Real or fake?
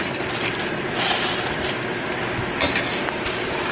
real